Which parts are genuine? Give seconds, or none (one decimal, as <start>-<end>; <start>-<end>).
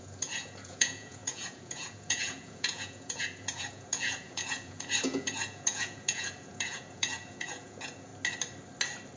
8.1-9.2